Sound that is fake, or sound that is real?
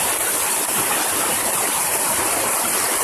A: fake